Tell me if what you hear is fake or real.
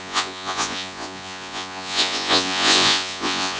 fake